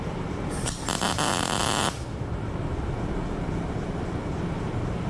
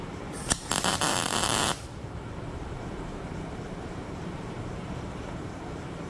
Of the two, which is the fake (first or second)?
second